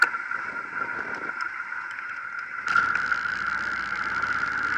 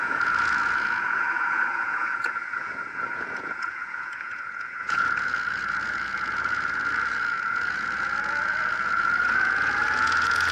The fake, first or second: second